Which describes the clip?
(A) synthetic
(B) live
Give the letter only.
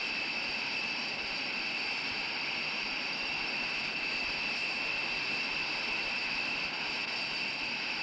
A